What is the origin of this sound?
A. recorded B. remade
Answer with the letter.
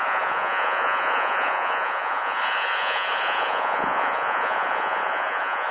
B